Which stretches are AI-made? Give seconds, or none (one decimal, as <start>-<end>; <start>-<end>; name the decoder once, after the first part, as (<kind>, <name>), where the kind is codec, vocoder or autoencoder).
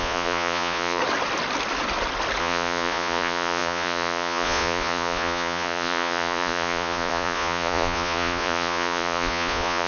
0.0-1.0 (vocoder, Vocos); 2.4-9.9